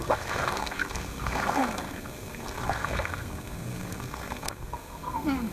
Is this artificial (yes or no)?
yes